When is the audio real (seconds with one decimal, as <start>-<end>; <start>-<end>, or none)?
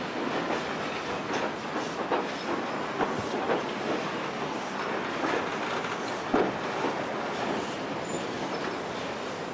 0.0-5.5; 6.1-9.5